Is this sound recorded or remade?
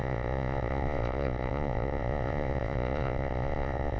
remade